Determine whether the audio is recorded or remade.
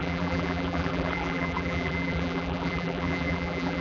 remade